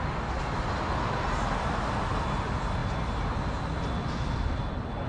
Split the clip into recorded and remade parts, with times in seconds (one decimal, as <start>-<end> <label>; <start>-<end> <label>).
0.0-5.1 recorded